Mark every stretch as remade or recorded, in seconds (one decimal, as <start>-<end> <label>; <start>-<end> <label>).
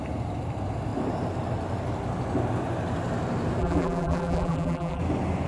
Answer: 0.0-3.6 recorded; 3.6-5.0 remade; 5.0-5.5 recorded